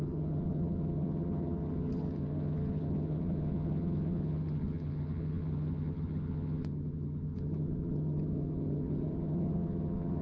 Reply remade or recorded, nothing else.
remade